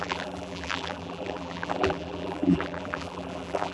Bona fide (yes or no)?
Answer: no